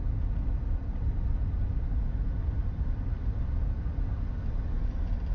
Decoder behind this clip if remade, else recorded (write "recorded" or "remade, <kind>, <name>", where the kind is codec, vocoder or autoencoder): recorded